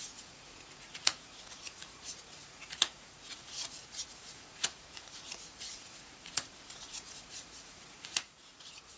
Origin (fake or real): fake